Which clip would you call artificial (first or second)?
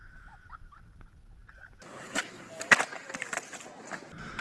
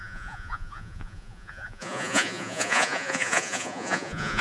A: second